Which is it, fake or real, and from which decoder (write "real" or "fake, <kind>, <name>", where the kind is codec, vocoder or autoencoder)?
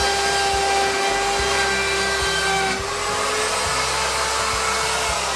real